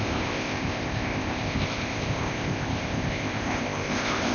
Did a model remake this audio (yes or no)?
yes